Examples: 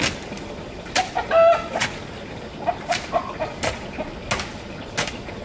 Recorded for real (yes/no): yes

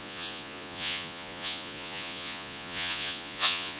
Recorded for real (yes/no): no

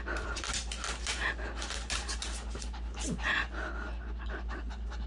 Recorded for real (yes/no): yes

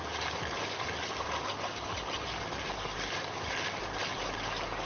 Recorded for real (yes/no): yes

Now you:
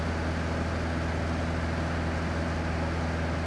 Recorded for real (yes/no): yes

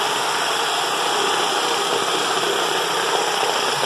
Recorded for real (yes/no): yes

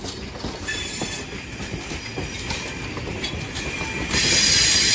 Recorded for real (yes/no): yes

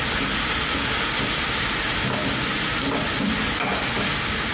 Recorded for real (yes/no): yes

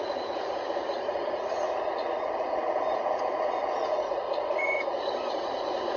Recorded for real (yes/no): no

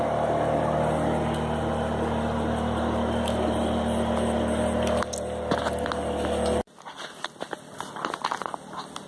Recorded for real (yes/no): yes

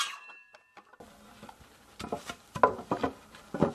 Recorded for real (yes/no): yes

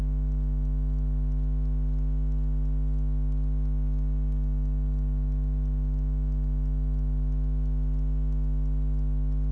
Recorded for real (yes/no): yes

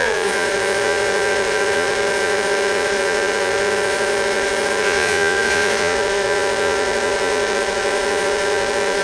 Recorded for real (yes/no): no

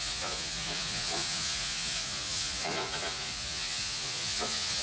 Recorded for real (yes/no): no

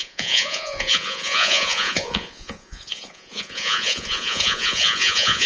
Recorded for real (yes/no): no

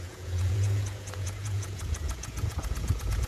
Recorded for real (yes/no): no